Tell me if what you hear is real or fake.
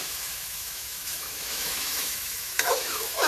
fake